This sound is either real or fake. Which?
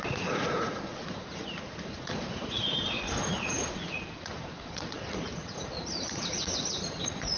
fake